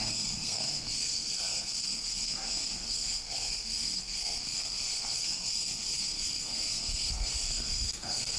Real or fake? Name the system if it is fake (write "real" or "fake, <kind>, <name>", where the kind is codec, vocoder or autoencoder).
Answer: fake, codec, SNAC